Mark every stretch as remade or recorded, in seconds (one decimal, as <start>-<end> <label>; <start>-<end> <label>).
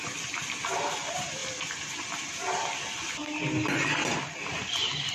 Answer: 0.0-5.1 recorded